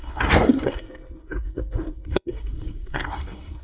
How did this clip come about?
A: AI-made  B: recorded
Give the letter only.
A